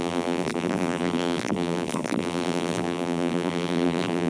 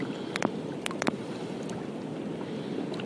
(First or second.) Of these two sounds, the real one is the second